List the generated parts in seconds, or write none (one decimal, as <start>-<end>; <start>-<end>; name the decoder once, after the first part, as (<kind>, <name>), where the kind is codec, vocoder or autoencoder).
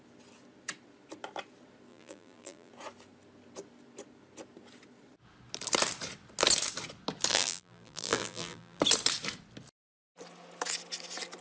1.9-2.7 (vocoder, BigVGAN v2); 7.3-8.8